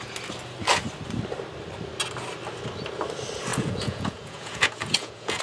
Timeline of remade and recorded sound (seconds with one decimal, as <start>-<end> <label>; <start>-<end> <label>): 0.0-3.5 recorded; 3.5-5.4 remade